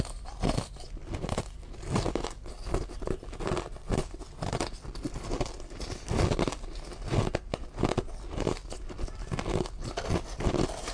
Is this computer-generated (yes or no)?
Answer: yes